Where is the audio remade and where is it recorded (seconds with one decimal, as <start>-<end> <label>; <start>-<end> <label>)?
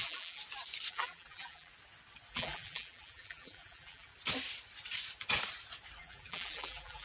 0.0-0.4 remade; 0.4-0.9 recorded; 0.9-1.7 remade; 1.7-2.3 recorded; 2.3-4.1 remade; 4.1-6.0 recorded; 6.0-7.0 remade